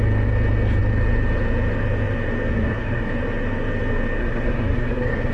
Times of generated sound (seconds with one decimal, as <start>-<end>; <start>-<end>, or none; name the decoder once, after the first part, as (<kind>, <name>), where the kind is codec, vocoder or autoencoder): 2.5-3.1 (codec, SNAC); 4.2-5.3

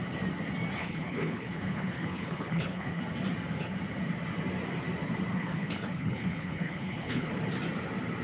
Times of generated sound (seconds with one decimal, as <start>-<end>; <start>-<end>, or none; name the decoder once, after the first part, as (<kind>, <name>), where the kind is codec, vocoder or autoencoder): 0.8-3.0 (codec, HILCodec); 5.3-7.3

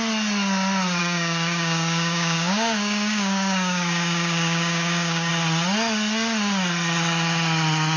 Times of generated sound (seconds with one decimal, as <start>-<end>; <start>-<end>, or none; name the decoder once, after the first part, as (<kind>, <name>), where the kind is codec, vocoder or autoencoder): 1.0-5.3 (codec, DAC)

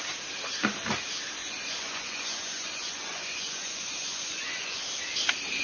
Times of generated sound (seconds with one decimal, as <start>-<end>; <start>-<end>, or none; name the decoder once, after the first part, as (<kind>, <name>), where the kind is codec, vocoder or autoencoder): 1.4-4.8 (vocoder, Vocos)

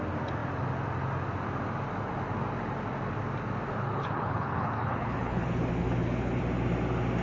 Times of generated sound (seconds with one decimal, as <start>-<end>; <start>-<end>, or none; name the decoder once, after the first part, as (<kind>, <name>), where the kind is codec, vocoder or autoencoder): 3.7-6.4 (codec, HILCodec)